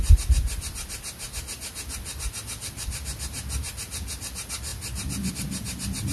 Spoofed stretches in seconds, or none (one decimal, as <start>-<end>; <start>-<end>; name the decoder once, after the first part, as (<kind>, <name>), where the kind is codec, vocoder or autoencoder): none